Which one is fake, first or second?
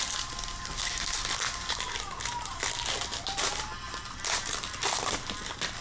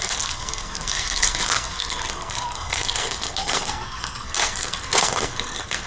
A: second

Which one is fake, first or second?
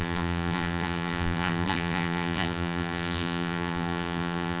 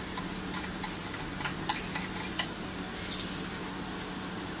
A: first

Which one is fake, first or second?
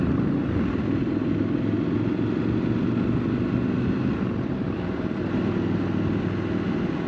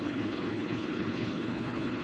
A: second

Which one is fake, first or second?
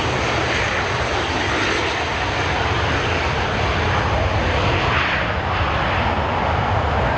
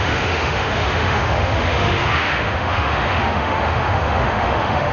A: second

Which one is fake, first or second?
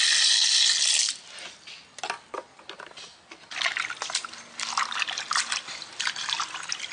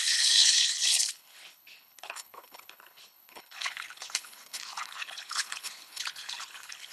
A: second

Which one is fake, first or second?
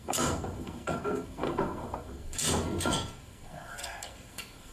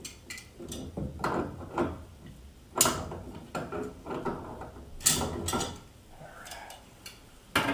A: first